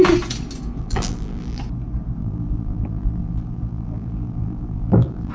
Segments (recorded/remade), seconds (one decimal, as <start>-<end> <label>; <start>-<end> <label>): 0.0-0.8 recorded; 0.8-1.6 remade; 1.6-2.2 recorded; 2.2-5.3 remade